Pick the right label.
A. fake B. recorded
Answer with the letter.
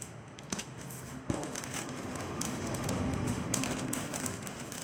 A